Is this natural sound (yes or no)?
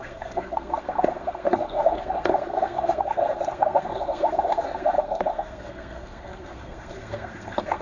no